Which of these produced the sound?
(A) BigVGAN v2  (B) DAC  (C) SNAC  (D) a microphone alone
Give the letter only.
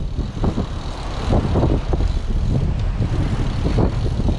D